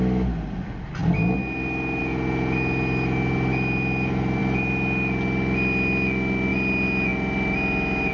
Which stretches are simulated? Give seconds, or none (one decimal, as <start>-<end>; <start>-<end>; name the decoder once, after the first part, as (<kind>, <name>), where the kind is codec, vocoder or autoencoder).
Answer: none

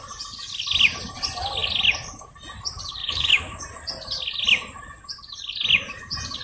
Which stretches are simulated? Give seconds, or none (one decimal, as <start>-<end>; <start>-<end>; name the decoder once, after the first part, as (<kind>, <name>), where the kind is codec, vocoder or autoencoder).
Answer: 3.0-3.6 (autoencoder, DAC-VAE)

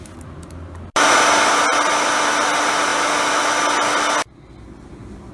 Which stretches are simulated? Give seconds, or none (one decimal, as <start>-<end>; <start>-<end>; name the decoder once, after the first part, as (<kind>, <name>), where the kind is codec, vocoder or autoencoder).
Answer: none

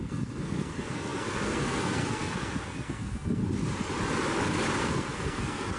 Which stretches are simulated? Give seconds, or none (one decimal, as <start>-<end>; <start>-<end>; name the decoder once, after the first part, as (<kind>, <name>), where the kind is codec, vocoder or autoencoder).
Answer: 0.0-3.4 (codec, SNAC); 4.8-5.8

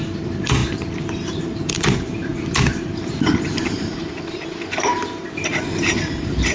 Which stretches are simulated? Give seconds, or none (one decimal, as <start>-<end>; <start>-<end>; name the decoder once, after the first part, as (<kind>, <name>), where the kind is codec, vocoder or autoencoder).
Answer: 0.0-0.6 (vocoder, BigVGAN v2); 1.4-6.5